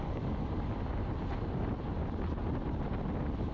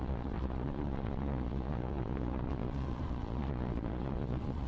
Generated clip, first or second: second